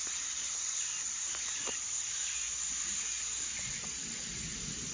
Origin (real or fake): real